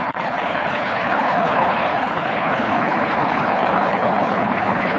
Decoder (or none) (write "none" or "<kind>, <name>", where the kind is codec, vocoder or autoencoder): codec, HILCodec